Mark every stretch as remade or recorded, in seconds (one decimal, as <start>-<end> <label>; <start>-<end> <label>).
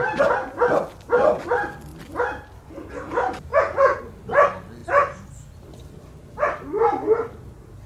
0.0-3.5 recorded; 3.5-4.0 remade; 4.0-7.9 recorded